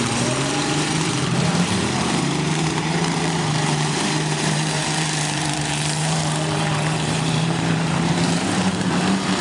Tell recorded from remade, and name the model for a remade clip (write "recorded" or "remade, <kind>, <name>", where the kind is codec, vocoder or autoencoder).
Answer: remade, vocoder, BigVGAN v2